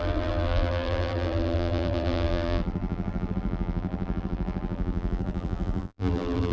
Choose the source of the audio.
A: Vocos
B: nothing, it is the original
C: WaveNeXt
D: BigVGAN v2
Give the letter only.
D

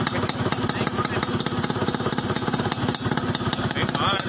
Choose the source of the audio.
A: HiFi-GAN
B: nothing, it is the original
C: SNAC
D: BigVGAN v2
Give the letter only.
B